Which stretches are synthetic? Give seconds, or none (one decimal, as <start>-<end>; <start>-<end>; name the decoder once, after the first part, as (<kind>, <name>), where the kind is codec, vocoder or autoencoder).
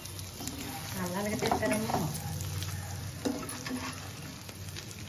none